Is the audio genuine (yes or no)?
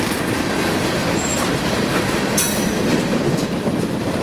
no